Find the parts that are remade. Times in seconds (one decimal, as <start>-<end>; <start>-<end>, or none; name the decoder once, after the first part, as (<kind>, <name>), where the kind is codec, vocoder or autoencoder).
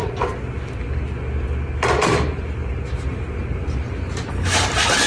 2.7-3.2 (vocoder, BigVGAN v2)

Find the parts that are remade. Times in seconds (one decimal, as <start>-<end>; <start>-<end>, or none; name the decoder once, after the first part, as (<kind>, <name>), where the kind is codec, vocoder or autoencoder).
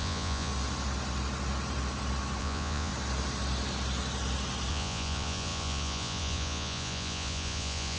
0.0-0.5 (vocoder, Vocos); 2.4-2.9; 4.7-8.0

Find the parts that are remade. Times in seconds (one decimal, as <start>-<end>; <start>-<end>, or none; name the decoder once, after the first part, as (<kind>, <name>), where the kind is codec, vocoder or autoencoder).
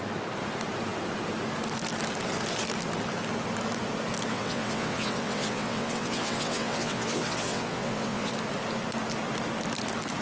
4.3-8.3 (vocoder, WaveNeXt)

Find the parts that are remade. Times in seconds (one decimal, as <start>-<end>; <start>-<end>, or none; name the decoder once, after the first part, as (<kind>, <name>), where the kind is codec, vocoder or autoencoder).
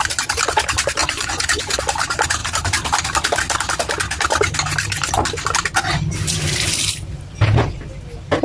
1.0-1.8 (vocoder, Vocos)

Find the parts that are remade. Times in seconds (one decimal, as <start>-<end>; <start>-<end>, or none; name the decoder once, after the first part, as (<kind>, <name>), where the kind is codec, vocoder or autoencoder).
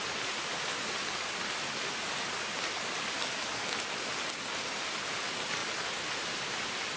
5.6-7.0 (vocoder, BigVGAN v2)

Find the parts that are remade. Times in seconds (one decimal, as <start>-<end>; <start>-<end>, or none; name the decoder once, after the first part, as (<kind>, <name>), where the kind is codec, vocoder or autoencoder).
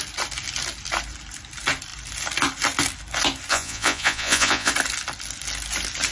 3.5-4.7 (vocoder, Vocos)